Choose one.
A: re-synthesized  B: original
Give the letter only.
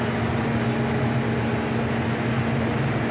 B